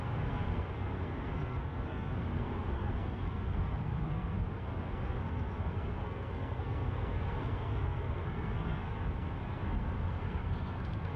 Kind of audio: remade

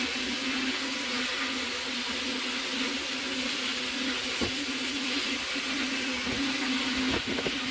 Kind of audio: recorded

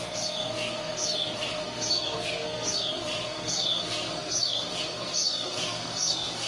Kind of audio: remade